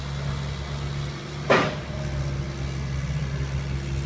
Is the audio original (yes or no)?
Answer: yes